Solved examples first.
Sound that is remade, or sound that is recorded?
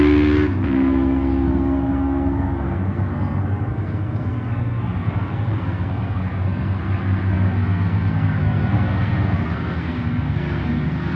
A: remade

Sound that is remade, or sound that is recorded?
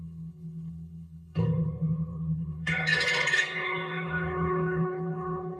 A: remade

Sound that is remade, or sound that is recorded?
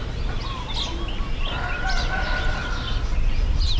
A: recorded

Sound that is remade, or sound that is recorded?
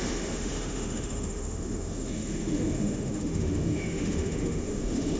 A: remade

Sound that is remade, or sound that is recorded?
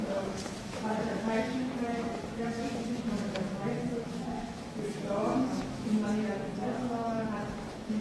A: remade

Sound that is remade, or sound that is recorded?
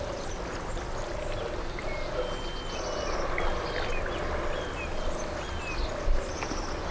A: recorded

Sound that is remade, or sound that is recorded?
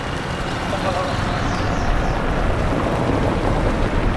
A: recorded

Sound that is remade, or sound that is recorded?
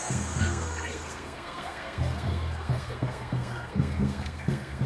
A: remade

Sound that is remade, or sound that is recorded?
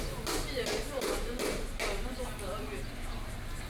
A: recorded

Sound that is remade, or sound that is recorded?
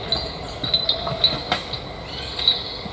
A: recorded